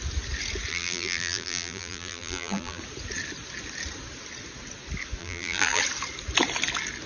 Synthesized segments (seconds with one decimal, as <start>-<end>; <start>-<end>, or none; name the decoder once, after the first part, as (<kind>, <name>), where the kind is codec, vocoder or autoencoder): 0.7-2.8 (vocoder, BigVGAN v2); 5.2-5.8